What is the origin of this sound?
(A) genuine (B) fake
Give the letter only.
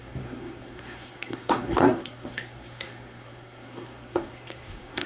B